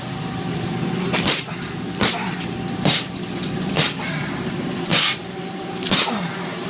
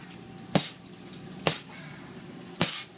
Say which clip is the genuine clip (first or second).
second